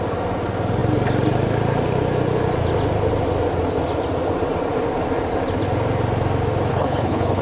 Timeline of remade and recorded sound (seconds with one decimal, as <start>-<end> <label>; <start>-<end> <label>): 0.0-6.7 recorded; 6.7-7.4 remade